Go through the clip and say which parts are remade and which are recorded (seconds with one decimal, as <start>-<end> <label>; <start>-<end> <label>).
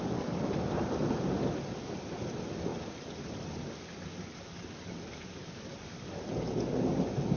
0.0-7.4 recorded